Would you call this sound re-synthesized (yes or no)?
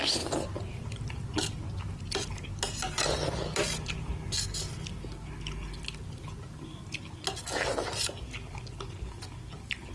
no